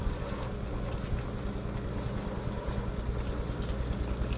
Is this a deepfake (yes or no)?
no